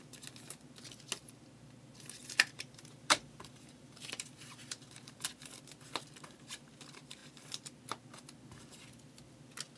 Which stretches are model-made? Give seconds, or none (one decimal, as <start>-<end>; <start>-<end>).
2.2-5.1